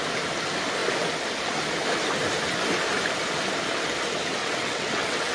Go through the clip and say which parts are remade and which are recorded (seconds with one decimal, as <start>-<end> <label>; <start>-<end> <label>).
0.0-4.4 recorded; 4.4-5.3 remade